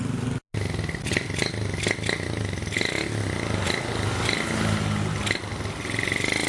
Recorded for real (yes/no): yes